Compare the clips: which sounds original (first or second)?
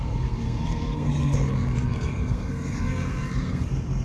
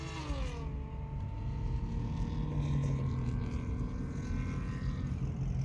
second